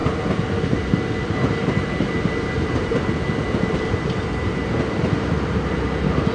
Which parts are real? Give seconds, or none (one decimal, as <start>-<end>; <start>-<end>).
0.0-6.3